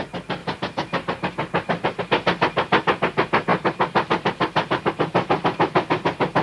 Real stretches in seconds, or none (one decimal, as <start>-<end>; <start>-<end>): 0.0-6.4